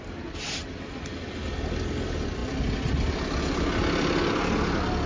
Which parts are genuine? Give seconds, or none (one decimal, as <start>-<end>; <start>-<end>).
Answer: 0.0-5.1